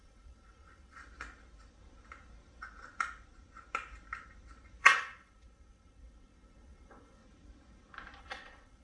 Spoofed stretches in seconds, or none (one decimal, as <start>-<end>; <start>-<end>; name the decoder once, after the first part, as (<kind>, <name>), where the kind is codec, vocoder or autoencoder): 0.0-1.0 (vocoder, WaveNeXt); 4.8-7.2; 8.2-8.8